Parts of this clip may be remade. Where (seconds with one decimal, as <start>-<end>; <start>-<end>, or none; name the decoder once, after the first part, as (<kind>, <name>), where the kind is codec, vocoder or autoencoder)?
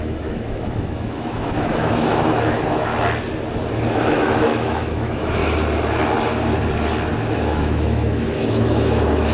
0.0-2.9 (autoencoder, DAC-VAE); 3.9-5.4; 7.3-9.3